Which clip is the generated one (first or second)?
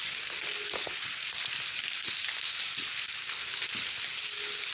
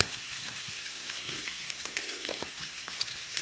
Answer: second